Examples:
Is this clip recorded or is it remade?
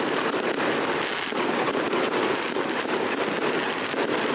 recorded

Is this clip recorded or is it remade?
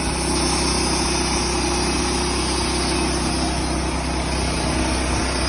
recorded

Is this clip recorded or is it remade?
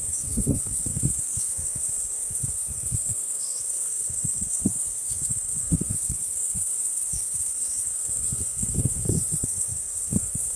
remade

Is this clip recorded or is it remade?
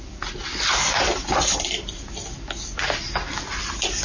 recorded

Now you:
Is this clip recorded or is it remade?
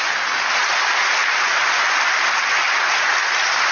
recorded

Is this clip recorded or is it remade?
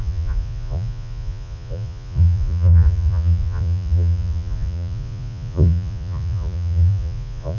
remade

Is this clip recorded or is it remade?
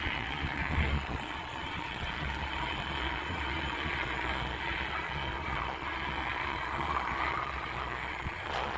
remade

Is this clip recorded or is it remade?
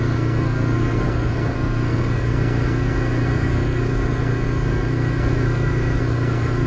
remade